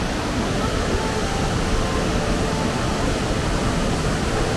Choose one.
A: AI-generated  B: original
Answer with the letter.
B